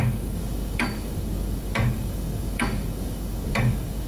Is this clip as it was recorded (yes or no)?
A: no